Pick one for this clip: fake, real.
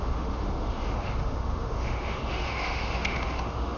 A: fake